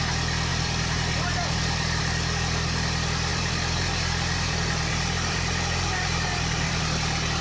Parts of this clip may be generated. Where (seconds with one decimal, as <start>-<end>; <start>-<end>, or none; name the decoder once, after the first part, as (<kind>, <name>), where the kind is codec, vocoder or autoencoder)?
0.5-2.0 (vocoder, BigVGAN v2); 3.3-6.8